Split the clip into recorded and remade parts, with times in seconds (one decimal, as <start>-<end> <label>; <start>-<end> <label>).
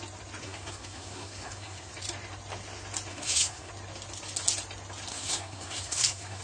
0.0-0.4 recorded; 0.4-1.9 remade; 1.9-3.1 recorded; 3.1-3.7 remade; 3.7-5.1 recorded; 5.1-6.4 remade